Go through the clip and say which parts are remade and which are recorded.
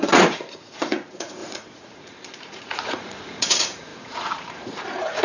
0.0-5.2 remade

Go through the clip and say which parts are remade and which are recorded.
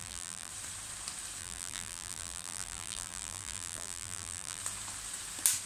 0.0-0.5 remade; 0.5-1.4 recorded; 1.4-4.6 remade; 4.6-5.7 recorded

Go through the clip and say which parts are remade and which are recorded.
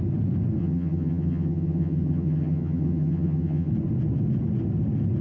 0.0-0.6 recorded; 0.6-3.7 remade; 3.7-5.2 recorded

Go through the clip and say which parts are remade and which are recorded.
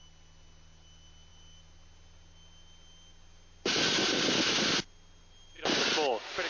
0.0-6.5 recorded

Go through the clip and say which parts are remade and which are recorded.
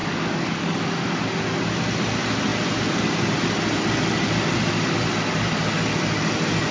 0.0-1.2 remade; 1.2-6.7 recorded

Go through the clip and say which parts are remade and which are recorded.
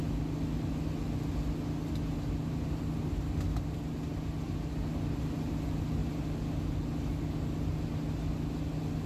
0.0-9.1 recorded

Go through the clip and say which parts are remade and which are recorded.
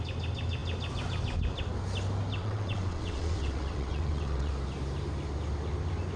0.0-2.4 recorded; 2.4-4.5 remade; 4.5-6.2 recorded